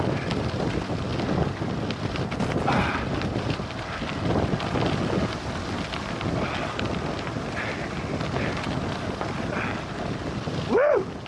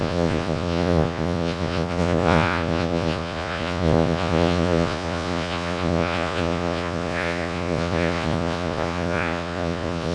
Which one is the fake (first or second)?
second